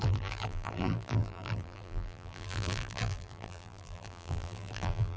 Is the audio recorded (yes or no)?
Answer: no